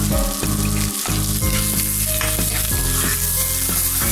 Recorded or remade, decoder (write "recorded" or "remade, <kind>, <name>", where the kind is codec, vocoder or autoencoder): recorded